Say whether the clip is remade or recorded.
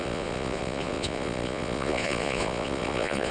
remade